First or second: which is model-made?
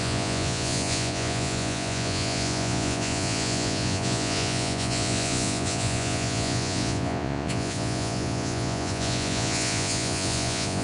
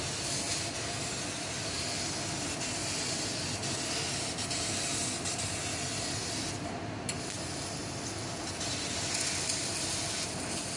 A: first